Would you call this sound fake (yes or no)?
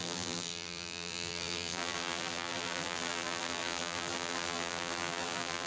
yes